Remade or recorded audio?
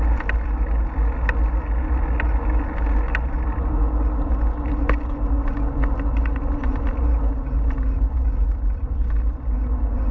recorded